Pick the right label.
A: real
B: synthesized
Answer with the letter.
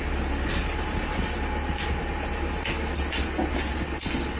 A